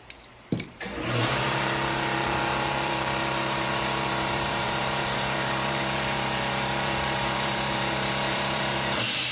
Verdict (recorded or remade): remade